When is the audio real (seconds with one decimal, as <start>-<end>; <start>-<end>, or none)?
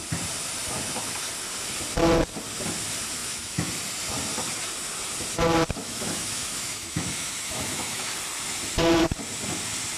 0.0-3.2; 3.7-5.8; 8.1-10.0